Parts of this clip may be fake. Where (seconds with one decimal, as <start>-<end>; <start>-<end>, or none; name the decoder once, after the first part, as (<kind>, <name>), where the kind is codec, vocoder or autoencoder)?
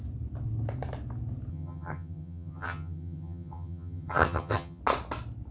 1.5-4.8 (vocoder, HiFi-GAN)